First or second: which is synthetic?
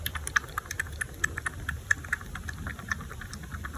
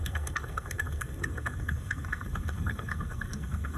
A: second